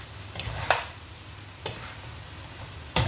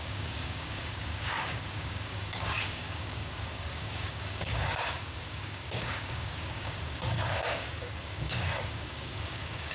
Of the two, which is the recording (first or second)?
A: first